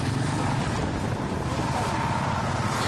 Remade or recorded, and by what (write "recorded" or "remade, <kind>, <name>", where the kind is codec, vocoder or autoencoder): recorded